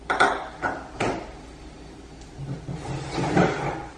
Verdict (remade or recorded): recorded